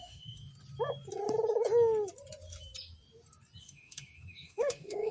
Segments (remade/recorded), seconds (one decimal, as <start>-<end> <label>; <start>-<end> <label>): 0.0-0.5 remade; 0.5-3.6 recorded; 3.6-5.1 remade